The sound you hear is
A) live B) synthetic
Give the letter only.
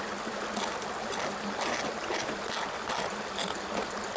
A